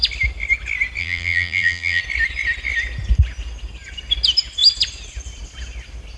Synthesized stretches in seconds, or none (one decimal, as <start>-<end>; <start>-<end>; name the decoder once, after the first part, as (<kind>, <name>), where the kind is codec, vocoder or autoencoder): 1.0-2.0 (vocoder, BigVGAN v2)

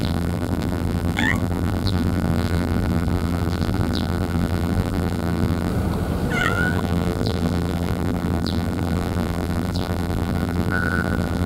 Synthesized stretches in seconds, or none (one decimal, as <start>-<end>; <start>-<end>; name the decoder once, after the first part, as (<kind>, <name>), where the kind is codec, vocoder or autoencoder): 0.0-5.7 (vocoder, BigVGAN v2); 6.4-11.5

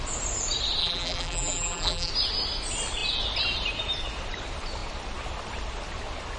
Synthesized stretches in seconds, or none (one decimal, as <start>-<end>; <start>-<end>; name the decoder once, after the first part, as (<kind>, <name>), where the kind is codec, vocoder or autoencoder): 0.8-2.1 (vocoder, BigVGAN v2)

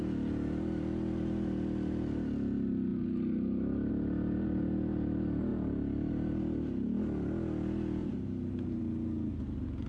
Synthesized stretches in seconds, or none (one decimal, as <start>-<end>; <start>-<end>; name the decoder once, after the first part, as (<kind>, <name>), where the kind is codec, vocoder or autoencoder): 8.0-8.8 (vocoder, BigVGAN v2)